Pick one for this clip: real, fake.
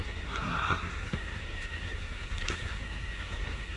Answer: fake